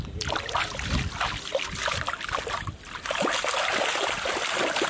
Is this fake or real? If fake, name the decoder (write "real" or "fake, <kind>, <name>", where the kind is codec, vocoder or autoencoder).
real